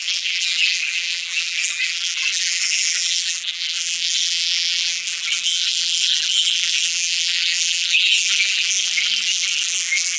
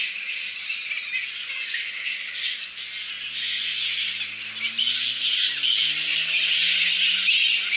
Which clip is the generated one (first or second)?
first